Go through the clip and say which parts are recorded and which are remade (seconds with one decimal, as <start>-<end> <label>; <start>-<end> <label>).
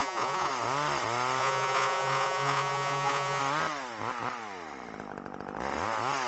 0.0-0.5 remade; 0.5-1.4 recorded; 1.4-3.4 remade; 3.4-6.3 recorded